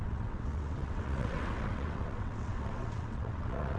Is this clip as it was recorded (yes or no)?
no